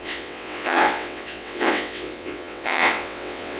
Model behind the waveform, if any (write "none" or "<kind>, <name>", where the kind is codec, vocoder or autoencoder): vocoder, WaveNeXt